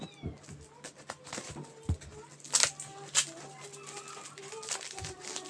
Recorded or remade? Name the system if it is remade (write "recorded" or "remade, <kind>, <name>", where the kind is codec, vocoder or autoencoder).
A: recorded